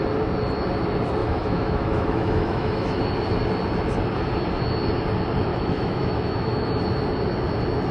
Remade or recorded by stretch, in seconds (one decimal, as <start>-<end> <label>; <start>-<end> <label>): 0.0-1.2 recorded; 1.2-3.0 remade; 3.0-5.5 recorded; 5.5-6.8 remade; 6.8-7.9 recorded